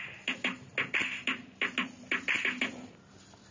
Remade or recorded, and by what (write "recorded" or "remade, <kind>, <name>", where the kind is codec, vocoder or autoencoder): recorded